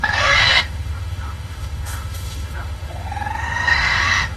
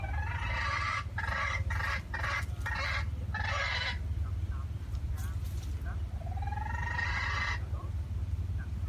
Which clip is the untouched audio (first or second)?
second